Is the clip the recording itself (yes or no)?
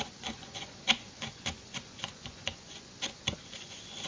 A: no